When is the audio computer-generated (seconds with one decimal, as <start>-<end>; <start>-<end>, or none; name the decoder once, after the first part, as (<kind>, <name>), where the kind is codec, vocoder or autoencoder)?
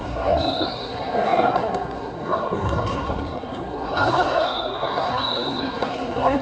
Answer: 0.0-6.4 (codec, SNAC)